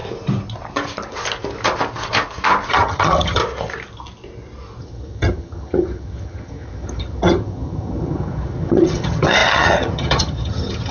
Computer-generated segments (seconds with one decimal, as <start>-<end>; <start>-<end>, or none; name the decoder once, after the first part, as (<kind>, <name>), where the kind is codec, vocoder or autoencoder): 2.7-3.4 (vocoder, HiFi-GAN); 4.8-10.9